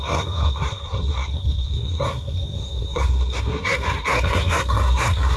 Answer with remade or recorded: remade